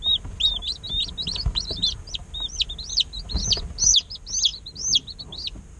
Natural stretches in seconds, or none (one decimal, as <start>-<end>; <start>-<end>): 0.0-5.8